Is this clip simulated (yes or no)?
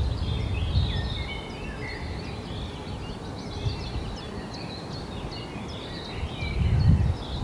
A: no